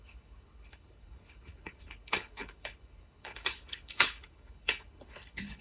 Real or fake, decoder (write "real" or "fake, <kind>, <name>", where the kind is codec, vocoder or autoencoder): fake, codec, HILCodec